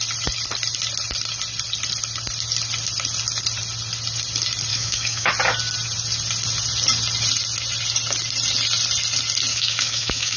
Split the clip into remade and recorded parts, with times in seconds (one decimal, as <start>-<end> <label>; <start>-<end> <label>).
0.0-4.7 recorded; 4.7-5.3 remade; 5.3-9.5 recorded; 9.5-10.4 remade